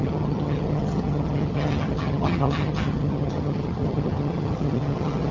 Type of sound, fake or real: fake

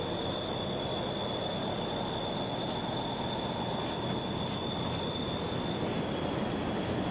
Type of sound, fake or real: real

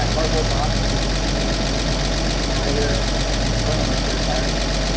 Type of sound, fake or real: real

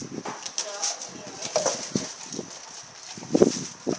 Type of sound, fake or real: real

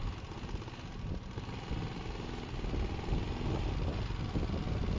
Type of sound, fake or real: real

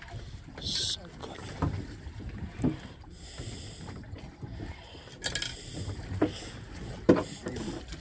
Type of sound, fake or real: real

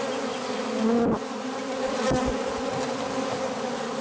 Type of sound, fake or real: real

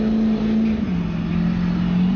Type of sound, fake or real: real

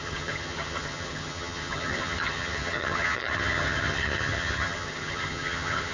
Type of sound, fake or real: fake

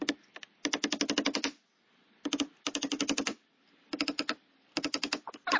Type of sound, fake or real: real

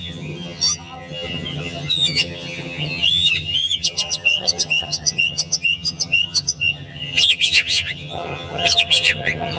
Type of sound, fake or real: fake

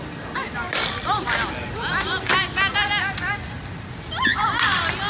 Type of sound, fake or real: real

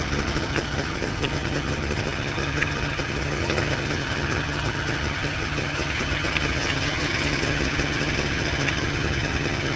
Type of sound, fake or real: fake